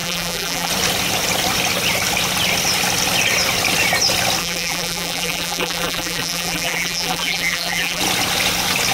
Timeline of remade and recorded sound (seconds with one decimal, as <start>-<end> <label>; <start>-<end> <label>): 0.0-0.7 remade; 0.7-4.4 recorded; 4.4-8.0 remade; 8.0-8.9 recorded